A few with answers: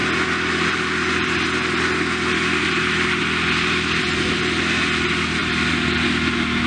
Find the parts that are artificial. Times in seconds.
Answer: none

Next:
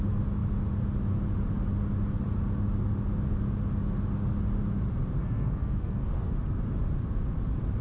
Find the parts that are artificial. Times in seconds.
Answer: 5.2-6.3 (codec, SNAC)

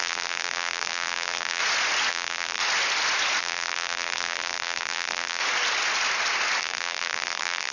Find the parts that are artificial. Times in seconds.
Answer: 0.0-1.6 (vocoder, BigVGAN v2); 2.1-2.6; 3.4-5.4; 6.6-7.7

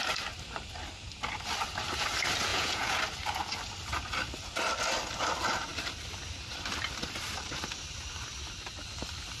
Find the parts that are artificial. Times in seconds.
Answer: 2.5-3.0 (vocoder, Vocos)